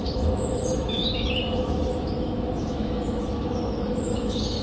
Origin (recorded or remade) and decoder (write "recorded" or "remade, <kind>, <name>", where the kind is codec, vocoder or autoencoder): remade, autoencoder, DAC-VAE